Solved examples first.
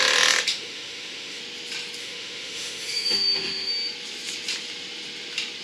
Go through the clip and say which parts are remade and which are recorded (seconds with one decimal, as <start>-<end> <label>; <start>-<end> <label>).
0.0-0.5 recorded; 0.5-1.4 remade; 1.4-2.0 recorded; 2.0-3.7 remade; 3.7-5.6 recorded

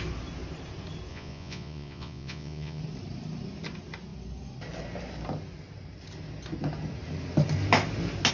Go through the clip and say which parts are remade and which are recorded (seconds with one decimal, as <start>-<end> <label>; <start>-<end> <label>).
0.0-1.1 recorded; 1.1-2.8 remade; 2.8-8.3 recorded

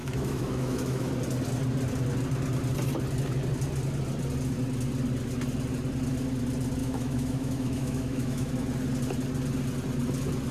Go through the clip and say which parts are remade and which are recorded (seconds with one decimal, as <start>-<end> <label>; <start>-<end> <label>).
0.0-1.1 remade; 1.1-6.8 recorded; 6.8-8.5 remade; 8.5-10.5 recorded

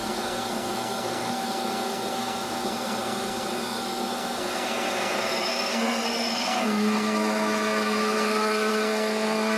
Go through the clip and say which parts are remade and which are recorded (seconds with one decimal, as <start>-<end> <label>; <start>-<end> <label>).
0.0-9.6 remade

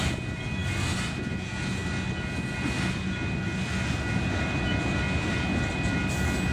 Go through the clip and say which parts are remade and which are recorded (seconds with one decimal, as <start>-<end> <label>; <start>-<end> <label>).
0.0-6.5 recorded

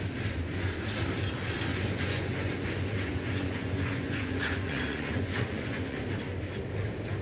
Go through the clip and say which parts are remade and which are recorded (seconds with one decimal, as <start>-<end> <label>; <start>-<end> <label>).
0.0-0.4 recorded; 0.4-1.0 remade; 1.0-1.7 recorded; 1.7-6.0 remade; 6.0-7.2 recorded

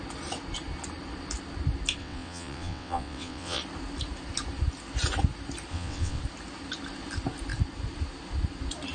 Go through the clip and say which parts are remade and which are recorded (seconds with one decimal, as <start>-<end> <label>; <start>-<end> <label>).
0.0-2.0 recorded; 2.0-3.6 remade; 3.6-5.7 recorded; 5.7-6.2 remade; 6.2-8.9 recorded

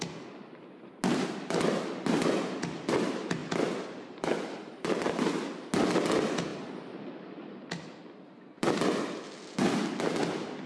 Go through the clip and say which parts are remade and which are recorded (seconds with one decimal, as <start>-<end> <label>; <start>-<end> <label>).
0.0-6.5 recorded; 6.5-7.1 remade; 7.1-10.7 recorded